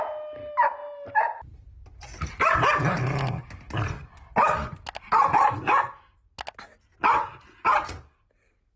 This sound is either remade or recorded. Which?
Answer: recorded